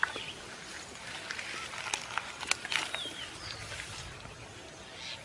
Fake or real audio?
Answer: real